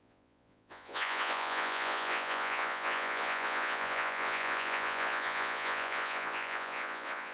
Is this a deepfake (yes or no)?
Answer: yes